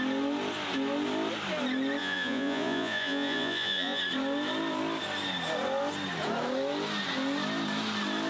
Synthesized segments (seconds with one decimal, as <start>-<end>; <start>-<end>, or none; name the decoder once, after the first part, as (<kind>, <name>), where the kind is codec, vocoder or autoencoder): 2.0-4.0 (vocoder, Vocos)